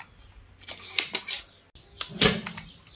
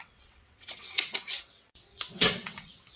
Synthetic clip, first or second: second